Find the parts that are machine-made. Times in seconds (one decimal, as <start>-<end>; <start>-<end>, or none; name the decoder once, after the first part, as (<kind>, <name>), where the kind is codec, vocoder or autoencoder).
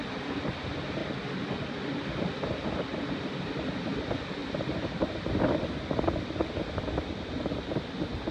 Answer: 4.4-5.1 (vocoder, BigVGAN v2)